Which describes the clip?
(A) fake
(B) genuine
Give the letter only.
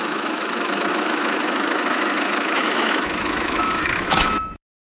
A